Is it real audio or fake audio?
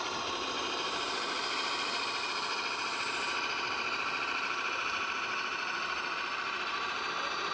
fake